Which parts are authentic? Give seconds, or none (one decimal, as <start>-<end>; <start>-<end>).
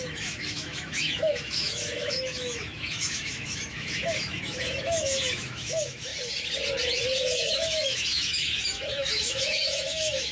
6.1-7.2